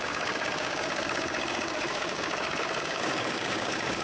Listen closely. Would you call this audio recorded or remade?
remade